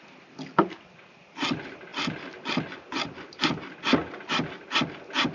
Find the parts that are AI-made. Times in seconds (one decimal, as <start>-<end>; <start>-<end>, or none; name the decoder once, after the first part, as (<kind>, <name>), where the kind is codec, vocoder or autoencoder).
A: none